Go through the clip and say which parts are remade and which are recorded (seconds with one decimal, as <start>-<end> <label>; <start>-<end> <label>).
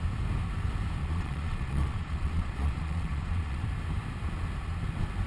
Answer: 0.0-1.0 recorded; 1.0-3.6 remade; 3.6-5.3 recorded